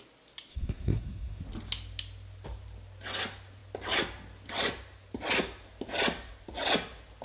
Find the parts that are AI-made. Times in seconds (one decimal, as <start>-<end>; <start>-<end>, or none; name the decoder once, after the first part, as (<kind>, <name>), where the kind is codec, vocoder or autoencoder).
0.5-1.4 (codec, SNAC)